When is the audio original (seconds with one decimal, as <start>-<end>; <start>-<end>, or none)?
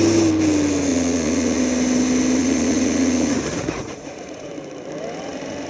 0.0-0.9; 1.6-2.4; 4.5-5.7